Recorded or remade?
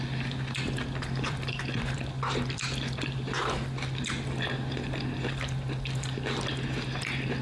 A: remade